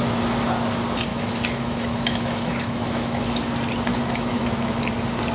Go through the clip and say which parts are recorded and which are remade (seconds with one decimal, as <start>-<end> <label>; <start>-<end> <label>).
0.0-1.1 recorded; 1.1-3.2 remade; 3.2-3.9 recorded; 3.9-4.8 remade; 4.8-5.3 recorded